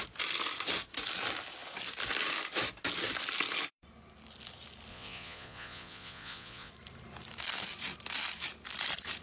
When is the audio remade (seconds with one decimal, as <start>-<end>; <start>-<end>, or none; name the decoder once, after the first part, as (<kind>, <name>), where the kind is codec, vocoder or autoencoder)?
4.9-6.7 (vocoder, Vocos)